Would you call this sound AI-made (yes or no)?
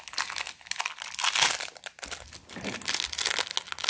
no